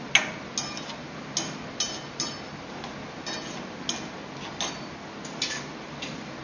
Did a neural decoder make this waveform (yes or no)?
no